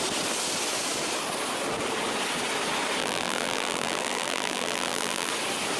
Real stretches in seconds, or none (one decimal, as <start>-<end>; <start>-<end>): 0.0-3.0; 5.3-5.8